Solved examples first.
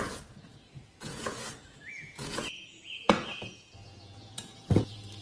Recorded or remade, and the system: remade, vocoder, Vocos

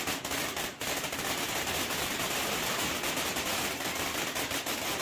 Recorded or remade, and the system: recorded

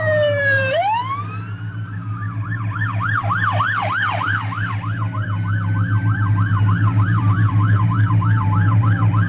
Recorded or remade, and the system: recorded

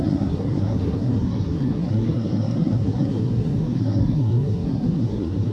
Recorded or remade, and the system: remade, codec, SNAC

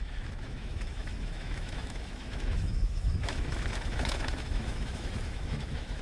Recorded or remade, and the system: remade, autoencoder, DAC-VAE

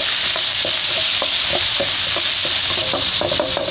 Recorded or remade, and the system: recorded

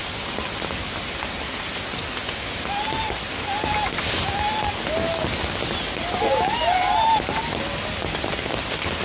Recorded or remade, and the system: recorded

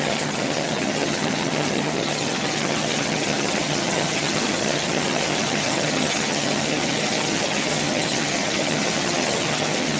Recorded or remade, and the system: remade, vocoder, HiFi-GAN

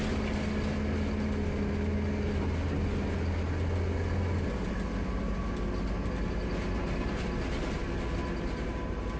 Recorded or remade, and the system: recorded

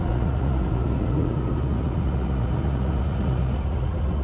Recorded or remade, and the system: remade, vocoder, Vocos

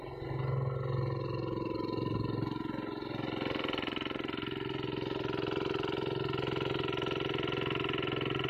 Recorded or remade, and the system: recorded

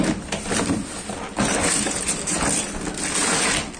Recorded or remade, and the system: recorded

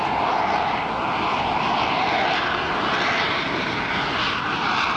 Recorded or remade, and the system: recorded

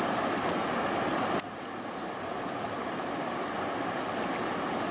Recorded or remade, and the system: recorded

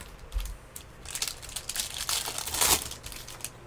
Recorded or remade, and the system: recorded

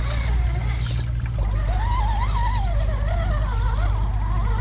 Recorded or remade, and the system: recorded